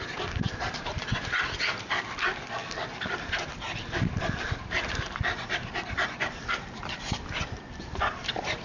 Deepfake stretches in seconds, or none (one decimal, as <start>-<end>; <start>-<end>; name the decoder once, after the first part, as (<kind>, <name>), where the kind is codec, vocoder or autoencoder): 0.0-8.6 (vocoder, BigVGAN v2)